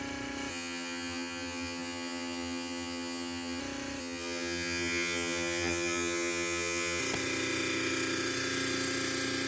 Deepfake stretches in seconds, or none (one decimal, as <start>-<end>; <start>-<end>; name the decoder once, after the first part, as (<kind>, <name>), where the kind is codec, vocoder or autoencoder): 0.5-3.6 (vocoder, HiFi-GAN); 4.0-7.0